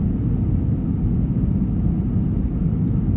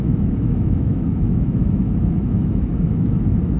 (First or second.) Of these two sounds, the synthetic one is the second